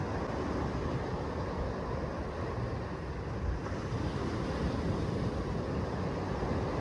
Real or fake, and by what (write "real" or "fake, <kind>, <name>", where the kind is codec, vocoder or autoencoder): real